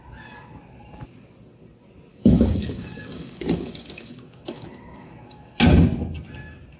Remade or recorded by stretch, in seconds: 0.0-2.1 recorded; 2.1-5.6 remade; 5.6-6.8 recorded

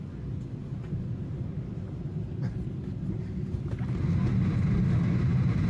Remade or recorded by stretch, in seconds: 0.0-5.7 recorded

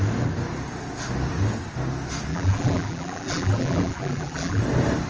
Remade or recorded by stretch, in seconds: 0.0-2.3 recorded; 2.3-4.6 remade; 4.6-5.1 recorded

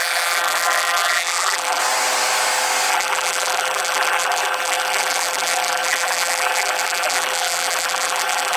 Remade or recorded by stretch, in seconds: 0.0-1.8 remade; 1.8-2.9 recorded; 2.9-8.6 remade

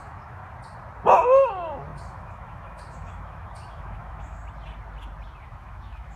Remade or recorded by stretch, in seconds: 0.0-0.4 remade; 0.4-1.5 recorded; 1.5-4.4 remade; 4.4-5.4 recorded; 5.4-6.2 remade